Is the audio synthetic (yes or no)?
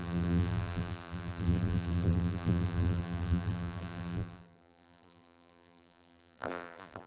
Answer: yes